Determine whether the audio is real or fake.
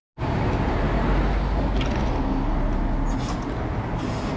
real